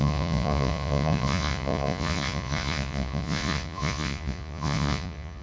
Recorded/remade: remade